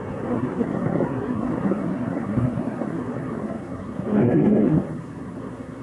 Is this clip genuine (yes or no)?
no